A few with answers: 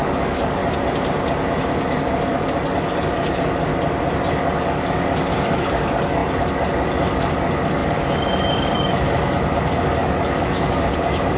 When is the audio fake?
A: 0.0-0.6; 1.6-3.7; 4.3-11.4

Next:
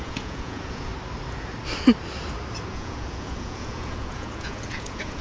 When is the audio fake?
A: 0.0-0.9; 2.7-5.2

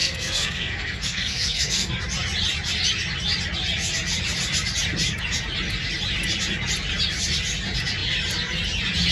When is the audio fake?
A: 0.0-1.9